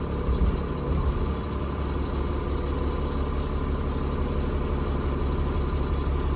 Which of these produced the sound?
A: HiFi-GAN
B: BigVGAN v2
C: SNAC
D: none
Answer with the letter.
D